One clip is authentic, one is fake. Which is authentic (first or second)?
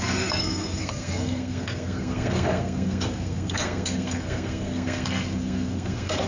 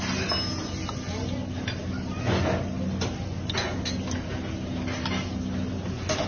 second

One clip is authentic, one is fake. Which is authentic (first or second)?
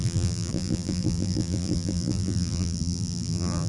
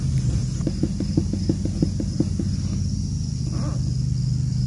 second